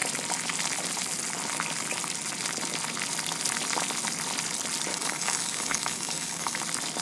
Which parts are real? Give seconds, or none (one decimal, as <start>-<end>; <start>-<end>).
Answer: 0.0-4.9; 6.6-7.0